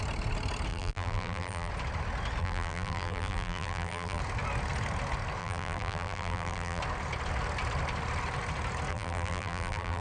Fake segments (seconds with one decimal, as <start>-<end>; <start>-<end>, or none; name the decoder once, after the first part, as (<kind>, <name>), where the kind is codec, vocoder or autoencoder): 0.7-1.7 (vocoder, BigVGAN v2); 2.4-4.2; 5.4-6.8; 8.9-10.0